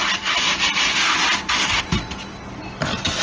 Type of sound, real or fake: real